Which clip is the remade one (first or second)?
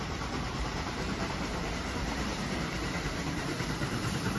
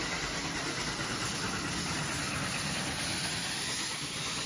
first